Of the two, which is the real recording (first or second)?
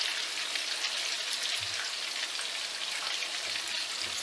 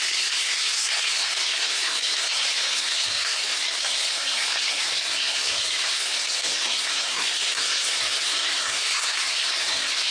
first